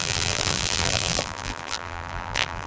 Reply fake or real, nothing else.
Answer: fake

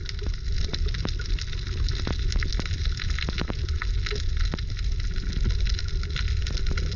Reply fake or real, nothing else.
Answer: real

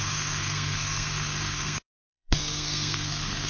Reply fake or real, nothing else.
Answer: fake